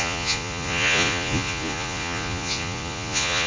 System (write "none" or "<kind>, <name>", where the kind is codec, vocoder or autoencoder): vocoder, Vocos